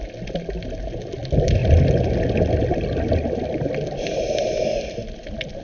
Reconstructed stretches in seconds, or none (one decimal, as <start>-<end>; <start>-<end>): none